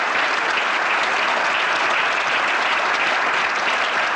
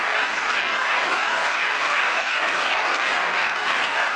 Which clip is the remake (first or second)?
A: second